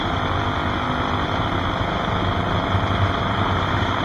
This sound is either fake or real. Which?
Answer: real